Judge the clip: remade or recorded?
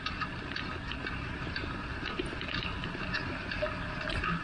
recorded